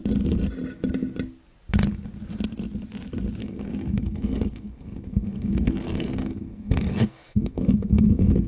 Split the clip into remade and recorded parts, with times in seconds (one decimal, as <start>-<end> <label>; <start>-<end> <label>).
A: 0.0-3.4 recorded; 3.4-8.5 remade